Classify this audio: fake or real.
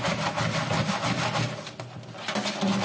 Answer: real